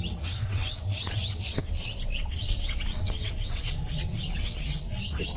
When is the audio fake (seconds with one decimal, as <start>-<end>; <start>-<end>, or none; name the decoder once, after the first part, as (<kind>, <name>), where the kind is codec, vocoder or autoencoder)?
0.0-5.4 (vocoder, WaveNeXt)